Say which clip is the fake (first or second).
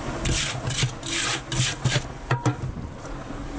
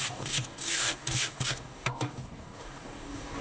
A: second